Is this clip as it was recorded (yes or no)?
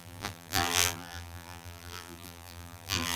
no